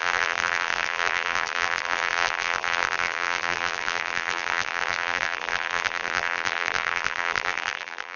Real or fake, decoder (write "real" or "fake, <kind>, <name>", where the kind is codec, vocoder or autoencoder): fake, vocoder, BigVGAN v2